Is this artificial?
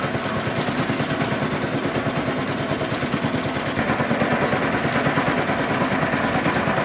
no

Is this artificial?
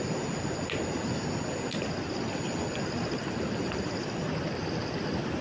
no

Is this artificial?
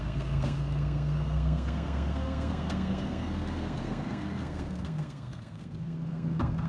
yes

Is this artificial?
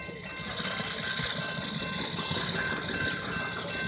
no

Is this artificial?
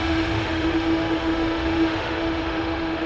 yes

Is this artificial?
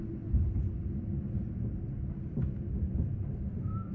no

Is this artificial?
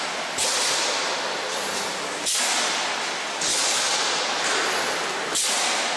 no